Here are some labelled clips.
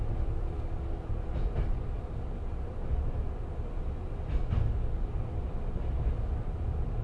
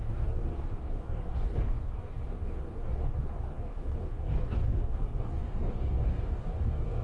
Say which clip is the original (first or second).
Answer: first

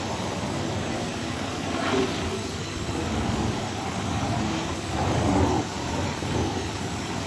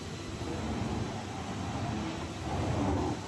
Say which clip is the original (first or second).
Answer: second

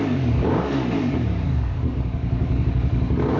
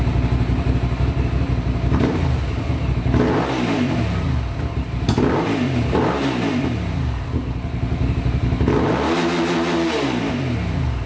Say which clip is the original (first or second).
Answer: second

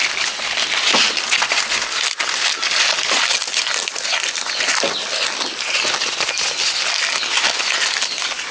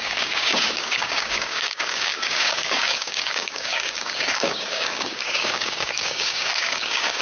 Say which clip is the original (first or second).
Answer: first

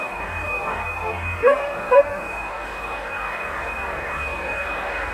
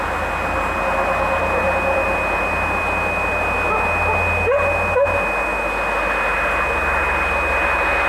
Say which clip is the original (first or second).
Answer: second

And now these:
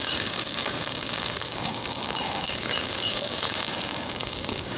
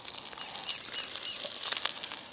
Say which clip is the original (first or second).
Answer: second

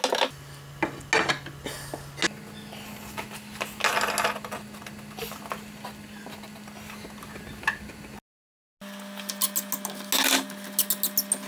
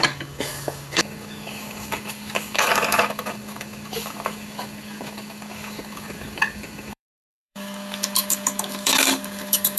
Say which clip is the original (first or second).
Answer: first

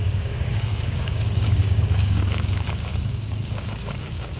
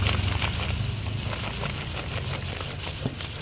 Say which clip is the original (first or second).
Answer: second